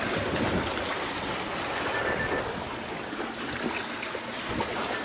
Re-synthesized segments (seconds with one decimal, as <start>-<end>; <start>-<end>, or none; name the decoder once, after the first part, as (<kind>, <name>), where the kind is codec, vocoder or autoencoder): none